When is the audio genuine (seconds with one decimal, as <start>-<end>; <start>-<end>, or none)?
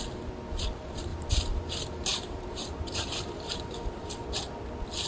0.0-1.1; 1.7-2.1; 4.2-5.1